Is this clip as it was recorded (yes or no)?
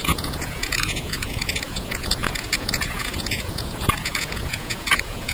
no